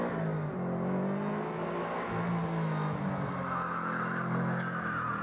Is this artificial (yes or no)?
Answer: no